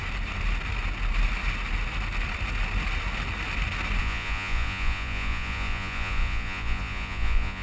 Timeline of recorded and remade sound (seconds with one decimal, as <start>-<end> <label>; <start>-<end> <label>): 0.0-4.0 recorded; 4.0-7.6 remade